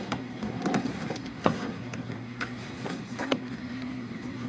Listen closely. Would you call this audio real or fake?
fake